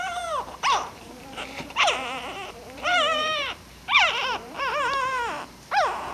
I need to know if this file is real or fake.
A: fake